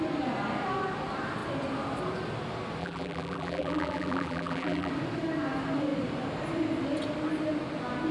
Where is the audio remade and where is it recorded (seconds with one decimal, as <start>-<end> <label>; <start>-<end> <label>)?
0.0-2.8 recorded; 2.8-4.9 remade; 4.9-8.1 recorded